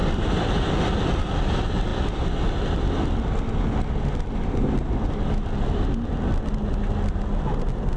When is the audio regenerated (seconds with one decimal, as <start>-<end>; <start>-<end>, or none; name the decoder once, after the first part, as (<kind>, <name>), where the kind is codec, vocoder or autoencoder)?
0.0-0.7 (vocoder, BigVGAN v2)